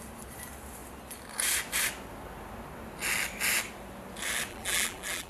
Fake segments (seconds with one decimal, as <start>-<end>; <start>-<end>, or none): 4.5-5.3